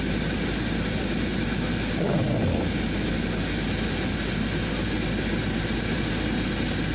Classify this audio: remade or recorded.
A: recorded